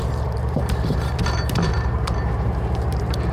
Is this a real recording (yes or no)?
no